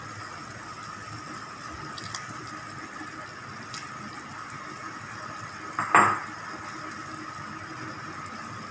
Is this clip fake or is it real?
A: real